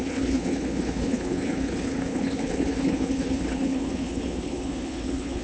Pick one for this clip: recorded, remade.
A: remade